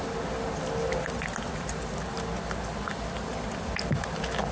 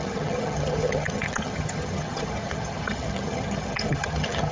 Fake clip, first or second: second